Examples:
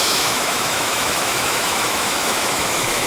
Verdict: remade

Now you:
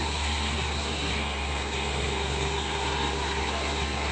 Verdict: remade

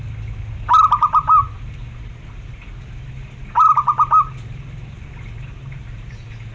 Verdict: recorded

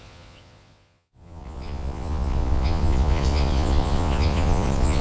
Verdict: remade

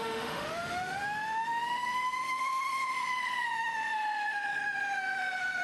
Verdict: remade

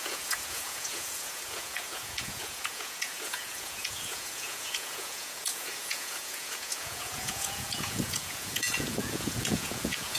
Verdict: remade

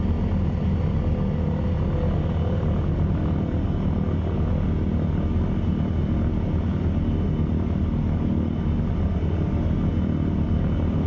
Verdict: recorded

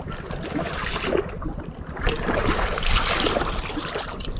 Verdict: recorded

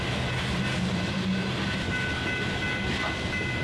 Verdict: recorded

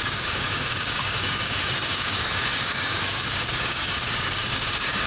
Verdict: remade